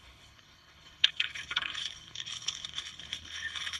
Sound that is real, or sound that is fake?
fake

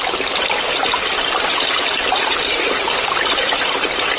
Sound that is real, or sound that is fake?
real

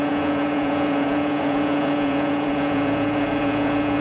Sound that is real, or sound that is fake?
fake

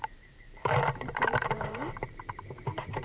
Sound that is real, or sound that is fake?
fake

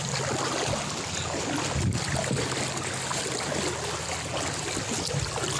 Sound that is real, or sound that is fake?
real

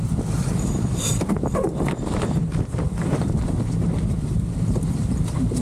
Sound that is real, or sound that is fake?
real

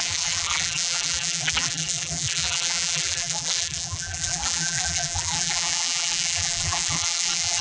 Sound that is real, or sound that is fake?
fake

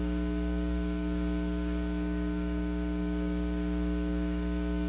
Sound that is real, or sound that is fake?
fake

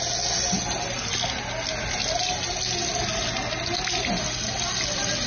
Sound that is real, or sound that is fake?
real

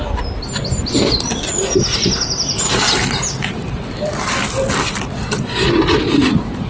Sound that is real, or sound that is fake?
real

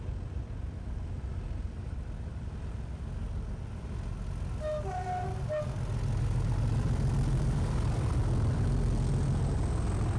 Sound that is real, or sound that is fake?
real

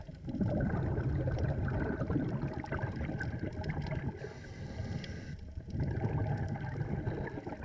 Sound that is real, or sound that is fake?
real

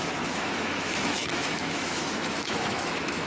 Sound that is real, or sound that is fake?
fake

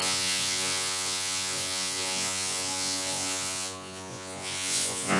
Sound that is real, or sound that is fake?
fake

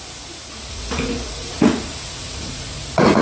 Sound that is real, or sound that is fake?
fake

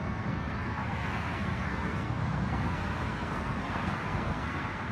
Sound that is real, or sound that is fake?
fake